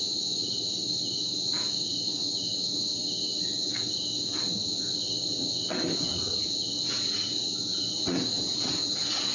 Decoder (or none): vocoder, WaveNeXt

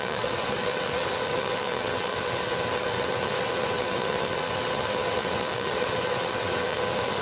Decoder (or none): vocoder, WaveNeXt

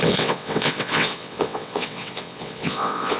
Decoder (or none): vocoder, WaveNeXt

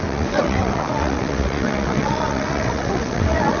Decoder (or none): vocoder, WaveNeXt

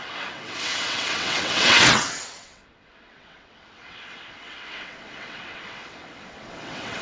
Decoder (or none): vocoder, WaveNeXt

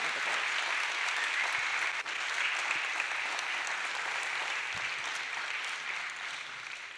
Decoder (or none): none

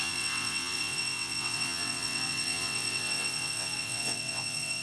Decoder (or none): vocoder, WaveNeXt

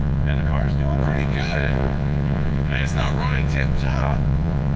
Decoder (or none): vocoder, WaveNeXt